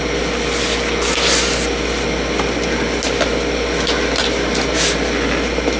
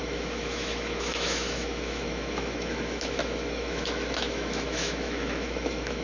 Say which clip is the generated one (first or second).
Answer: second